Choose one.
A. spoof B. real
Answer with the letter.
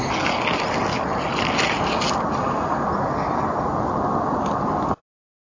B